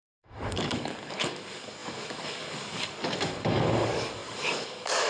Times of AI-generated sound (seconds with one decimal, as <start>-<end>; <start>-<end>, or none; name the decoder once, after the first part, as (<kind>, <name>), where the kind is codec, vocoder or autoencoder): 0.0-5.1 (codec, DAC)